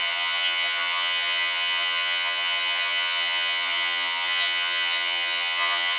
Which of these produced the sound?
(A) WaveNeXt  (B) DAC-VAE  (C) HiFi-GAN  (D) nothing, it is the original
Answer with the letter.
C